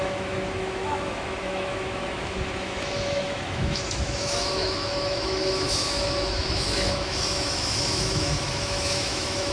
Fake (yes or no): yes